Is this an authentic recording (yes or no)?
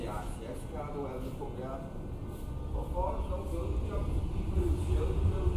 yes